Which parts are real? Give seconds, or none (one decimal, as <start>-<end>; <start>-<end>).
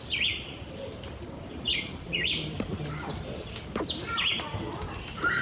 0.0-1.7; 4.7-5.4